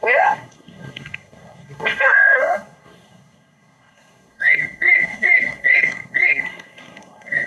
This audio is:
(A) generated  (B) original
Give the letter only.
A